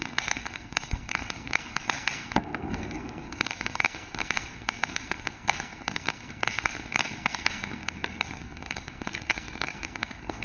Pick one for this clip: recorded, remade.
remade